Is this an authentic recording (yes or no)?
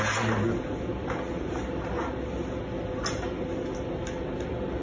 yes